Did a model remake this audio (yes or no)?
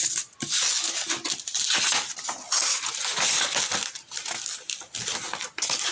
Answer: no